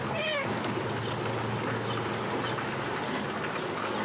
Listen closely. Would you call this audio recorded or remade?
recorded